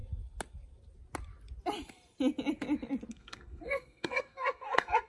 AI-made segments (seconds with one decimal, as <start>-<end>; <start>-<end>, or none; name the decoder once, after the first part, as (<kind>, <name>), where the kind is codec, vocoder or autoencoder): 3.1-5.1 (codec, SNAC)